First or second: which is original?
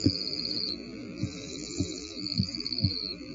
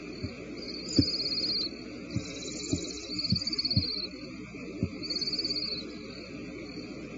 second